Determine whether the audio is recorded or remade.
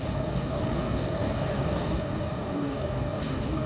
remade